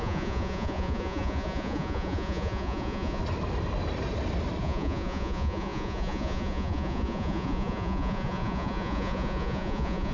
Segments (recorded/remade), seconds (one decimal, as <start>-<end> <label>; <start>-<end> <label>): 0.0-3.2 remade; 3.2-4.6 recorded; 4.6-10.1 remade